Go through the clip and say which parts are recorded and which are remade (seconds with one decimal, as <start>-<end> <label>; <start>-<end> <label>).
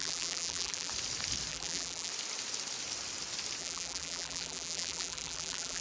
0.0-0.9 remade; 0.9-1.5 recorded; 1.5-2.1 remade; 2.1-3.6 recorded; 3.6-5.8 remade